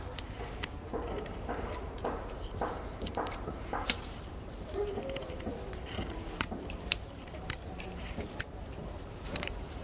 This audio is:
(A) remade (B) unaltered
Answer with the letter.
A